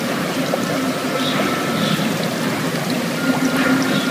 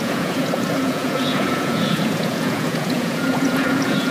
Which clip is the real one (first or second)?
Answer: first